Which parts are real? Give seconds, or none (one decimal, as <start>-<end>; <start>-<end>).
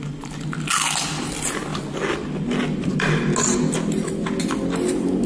0.0-5.3